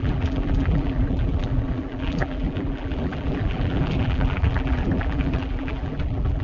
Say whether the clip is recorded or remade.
remade